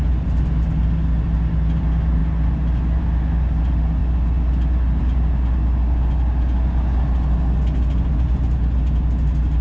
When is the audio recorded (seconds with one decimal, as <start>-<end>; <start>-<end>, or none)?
0.0-9.6